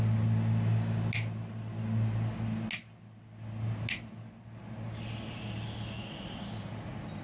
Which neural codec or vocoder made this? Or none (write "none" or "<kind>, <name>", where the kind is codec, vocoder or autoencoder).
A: none